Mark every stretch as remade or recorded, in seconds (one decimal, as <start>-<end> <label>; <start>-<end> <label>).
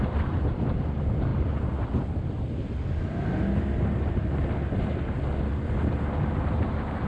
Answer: 0.0-7.1 recorded